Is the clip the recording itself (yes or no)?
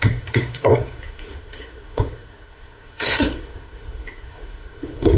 no